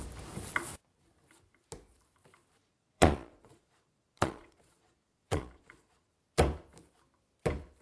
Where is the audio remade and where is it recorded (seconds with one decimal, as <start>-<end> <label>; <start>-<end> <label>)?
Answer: 0.0-2.6 recorded; 2.6-6.1 remade; 6.1-7.8 recorded